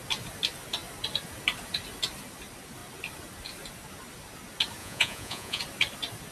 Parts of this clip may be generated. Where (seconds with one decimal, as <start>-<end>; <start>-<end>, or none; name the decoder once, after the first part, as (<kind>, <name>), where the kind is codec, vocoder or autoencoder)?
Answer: 4.8-5.6 (vocoder, Vocos)